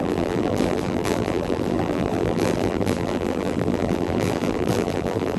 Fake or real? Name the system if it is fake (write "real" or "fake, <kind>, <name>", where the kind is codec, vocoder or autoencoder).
fake, vocoder, BigVGAN v2